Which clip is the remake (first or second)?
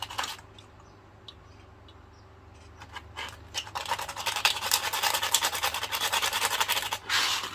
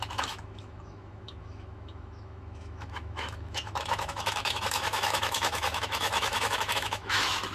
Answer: second